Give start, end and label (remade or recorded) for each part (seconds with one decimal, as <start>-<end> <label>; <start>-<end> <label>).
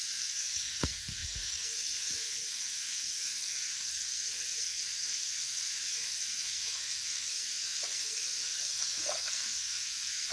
0.0-10.3 remade